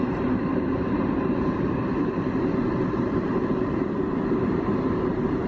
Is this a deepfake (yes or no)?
yes